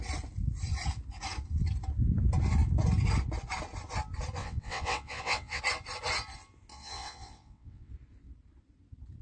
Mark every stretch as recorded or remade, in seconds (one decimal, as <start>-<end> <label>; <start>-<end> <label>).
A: 0.0-4.4 recorded; 4.4-5.6 remade; 5.6-6.7 recorded; 6.7-7.9 remade; 7.9-9.2 recorded